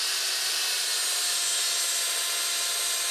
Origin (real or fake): real